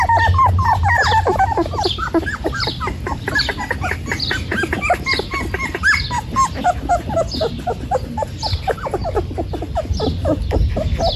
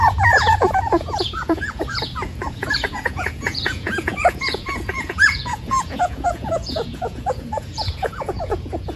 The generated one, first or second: second